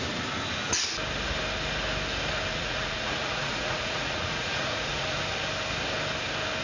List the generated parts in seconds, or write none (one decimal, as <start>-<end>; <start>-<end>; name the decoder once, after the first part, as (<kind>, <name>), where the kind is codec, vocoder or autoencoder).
2.5-5.2 (vocoder, Vocos)